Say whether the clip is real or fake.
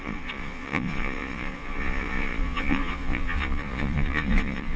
fake